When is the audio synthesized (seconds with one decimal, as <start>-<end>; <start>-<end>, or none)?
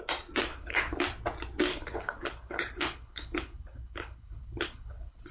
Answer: 0.5-1.0; 1.7-5.3